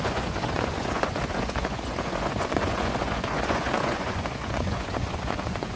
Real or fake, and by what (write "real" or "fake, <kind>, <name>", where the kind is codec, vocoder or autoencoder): fake, vocoder, Vocos